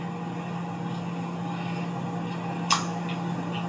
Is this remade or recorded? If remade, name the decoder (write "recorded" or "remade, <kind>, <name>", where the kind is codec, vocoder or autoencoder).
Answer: recorded